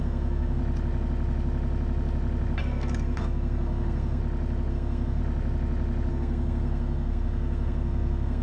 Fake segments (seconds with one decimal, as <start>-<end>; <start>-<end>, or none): 0.0-0.6; 2.6-4.2; 4.7-5.2; 6.1-8.4

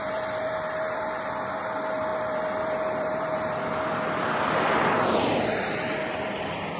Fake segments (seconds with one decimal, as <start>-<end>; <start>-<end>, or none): 0.0-6.8

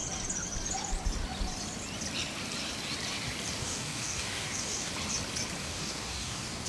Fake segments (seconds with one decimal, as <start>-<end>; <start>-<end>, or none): 3.6-4.9; 5.6-6.7

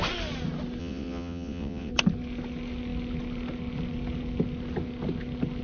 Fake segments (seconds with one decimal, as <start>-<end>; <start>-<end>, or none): 0.8-1.9